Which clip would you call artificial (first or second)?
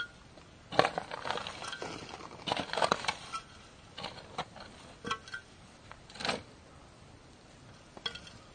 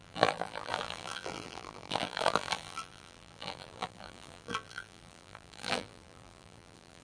second